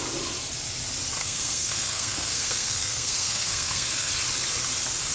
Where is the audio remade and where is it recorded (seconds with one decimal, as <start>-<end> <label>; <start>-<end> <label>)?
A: 0.0-1.2 recorded; 1.2-4.1 remade; 4.1-5.1 recorded

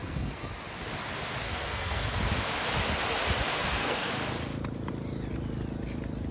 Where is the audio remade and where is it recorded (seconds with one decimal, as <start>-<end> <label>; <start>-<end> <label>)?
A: 0.0-0.5 remade; 0.5-1.4 recorded; 1.4-2.3 remade; 2.3-3.5 recorded; 3.5-4.1 remade; 4.1-6.3 recorded

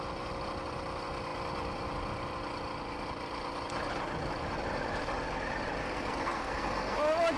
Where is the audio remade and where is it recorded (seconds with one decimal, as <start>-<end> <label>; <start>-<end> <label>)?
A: 0.0-5.8 recorded; 5.8-7.0 remade; 7.0-7.4 recorded

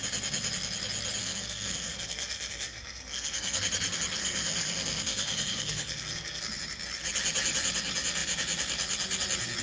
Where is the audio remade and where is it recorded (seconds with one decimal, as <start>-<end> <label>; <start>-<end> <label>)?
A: 0.0-1.2 recorded; 1.2-3.6 remade; 3.6-4.2 recorded; 4.2-6.4 remade; 6.4-9.6 recorded

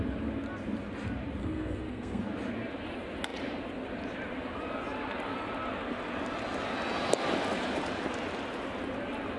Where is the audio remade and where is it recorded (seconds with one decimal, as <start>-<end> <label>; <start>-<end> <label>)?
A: 0.0-1.4 recorded; 1.4-2.2 remade; 2.2-9.4 recorded

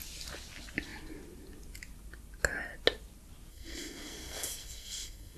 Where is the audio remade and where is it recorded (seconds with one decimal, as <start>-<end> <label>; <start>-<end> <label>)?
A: 0.0-3.5 recorded; 3.5-5.4 remade